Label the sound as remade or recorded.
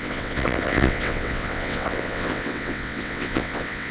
remade